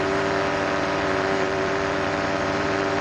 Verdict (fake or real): fake